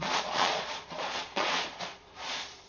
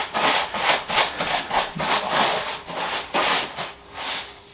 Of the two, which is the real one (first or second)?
second